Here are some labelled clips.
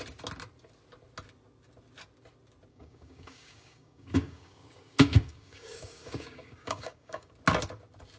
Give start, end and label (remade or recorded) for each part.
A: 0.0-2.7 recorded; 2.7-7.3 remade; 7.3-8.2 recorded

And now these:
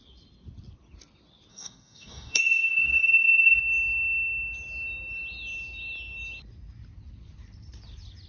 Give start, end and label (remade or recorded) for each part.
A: 0.0-1.5 recorded; 1.5-3.6 remade; 3.6-8.3 recorded

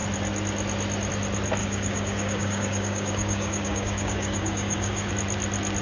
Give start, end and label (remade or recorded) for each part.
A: 0.0-1.6 recorded; 1.6-5.1 remade; 5.1-5.8 recorded

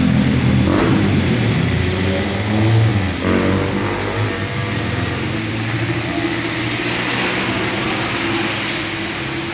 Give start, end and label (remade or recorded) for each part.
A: 0.0-9.5 recorded